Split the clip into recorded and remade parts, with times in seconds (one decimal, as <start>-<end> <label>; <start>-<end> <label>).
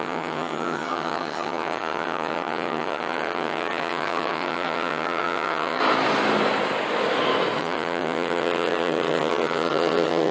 0.0-5.8 remade; 5.8-7.6 recorded; 7.6-10.3 remade